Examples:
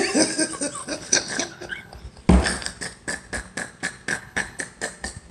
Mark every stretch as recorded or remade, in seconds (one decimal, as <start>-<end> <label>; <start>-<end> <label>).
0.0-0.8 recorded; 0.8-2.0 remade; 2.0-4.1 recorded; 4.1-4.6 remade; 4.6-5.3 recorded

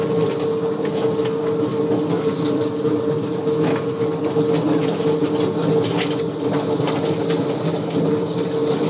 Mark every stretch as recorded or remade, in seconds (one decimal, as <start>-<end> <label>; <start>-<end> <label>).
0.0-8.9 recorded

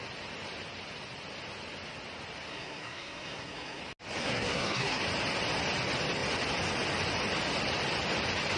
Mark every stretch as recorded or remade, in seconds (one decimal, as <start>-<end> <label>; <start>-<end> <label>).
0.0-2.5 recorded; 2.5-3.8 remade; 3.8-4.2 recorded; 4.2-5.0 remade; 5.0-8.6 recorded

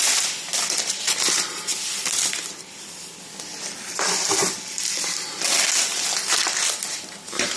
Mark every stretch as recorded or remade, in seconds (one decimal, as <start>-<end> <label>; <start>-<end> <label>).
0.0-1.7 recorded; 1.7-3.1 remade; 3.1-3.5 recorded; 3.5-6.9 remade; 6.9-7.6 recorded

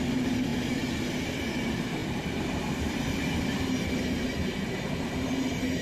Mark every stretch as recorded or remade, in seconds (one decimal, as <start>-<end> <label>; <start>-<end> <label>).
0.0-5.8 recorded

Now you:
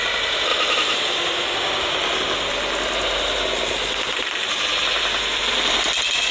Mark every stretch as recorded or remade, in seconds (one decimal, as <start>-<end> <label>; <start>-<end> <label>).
0.0-0.5 recorded; 0.5-2.2 remade; 2.2-6.3 recorded